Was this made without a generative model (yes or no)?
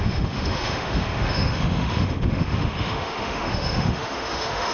no